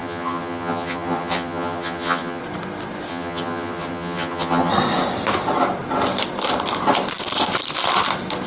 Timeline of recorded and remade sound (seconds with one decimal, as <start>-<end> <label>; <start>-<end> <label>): 0.0-2.4 remade; 2.4-3.1 recorded; 3.1-4.7 remade; 4.7-8.5 recorded